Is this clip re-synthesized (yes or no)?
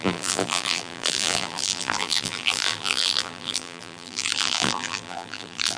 yes